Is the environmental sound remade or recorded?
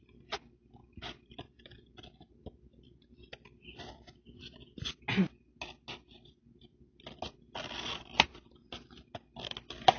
recorded